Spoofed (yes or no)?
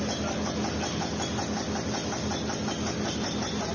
no